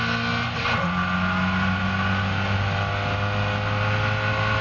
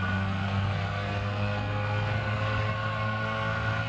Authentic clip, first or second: first